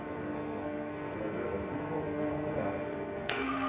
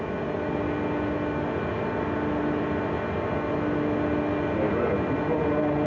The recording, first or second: second